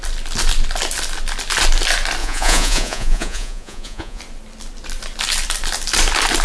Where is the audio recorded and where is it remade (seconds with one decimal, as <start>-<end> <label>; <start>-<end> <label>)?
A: 0.0-2.2 recorded; 2.2-4.2 remade; 4.2-6.4 recorded